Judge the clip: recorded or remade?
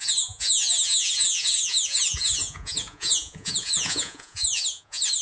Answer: remade